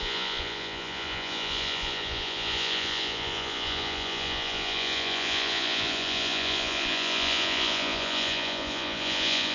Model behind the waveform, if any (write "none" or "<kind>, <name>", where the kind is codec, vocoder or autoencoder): vocoder, Vocos